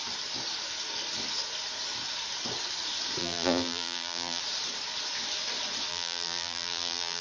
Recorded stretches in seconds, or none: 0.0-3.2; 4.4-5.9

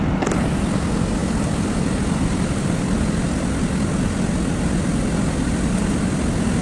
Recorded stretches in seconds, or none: 0.0-1.2; 3.0-6.6

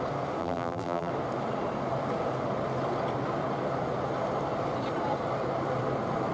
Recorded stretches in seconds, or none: 0.0-0.4; 1.1-6.3

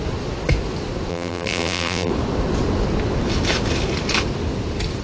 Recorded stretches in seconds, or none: 0.0-1.1; 2.1-5.0

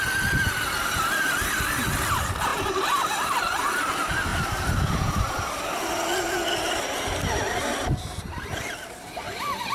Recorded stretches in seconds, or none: 0.0-4.3; 5.8-9.7

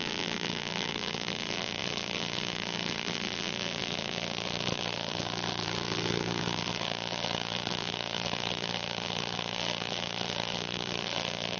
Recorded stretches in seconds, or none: none

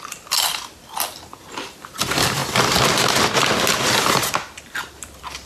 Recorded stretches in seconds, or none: 2.4-4.0